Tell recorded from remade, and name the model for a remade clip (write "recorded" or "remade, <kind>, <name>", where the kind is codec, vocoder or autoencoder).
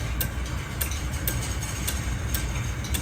recorded